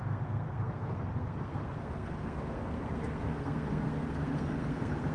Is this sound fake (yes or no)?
yes